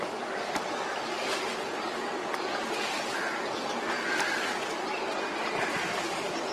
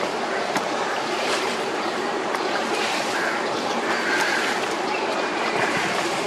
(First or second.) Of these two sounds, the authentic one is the first